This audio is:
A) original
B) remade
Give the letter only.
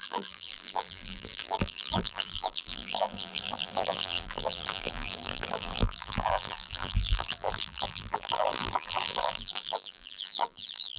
B